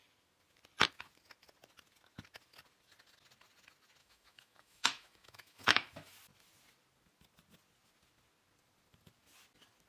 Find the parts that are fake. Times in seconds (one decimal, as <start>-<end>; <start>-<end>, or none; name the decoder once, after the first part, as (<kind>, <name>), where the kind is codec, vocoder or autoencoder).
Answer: 4.0-6.1 (autoencoder, DAC-VAE)